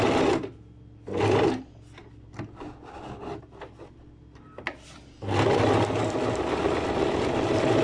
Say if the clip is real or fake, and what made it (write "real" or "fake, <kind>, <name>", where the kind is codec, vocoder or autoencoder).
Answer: real